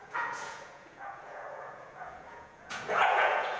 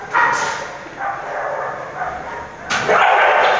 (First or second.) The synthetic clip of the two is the first